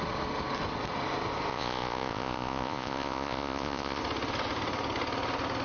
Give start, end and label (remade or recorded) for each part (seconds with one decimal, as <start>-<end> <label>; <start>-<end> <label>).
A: 0.0-1.5 recorded; 1.5-4.0 remade; 4.0-5.6 recorded